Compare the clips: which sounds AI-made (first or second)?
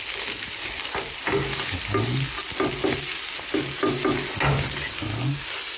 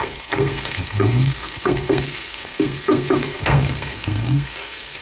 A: second